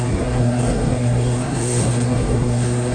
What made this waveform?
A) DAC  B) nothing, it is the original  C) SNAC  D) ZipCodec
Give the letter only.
C